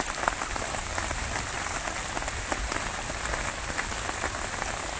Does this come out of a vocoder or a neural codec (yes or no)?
no